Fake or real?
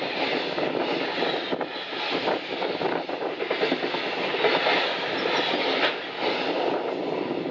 real